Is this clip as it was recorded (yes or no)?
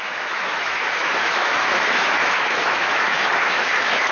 no